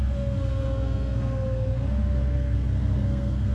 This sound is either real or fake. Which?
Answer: fake